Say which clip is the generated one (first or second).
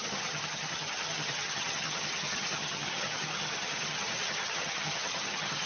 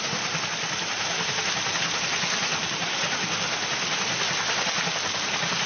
first